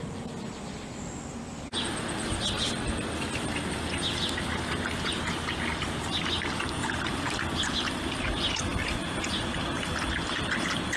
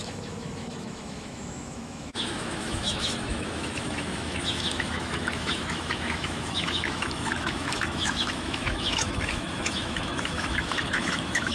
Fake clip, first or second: second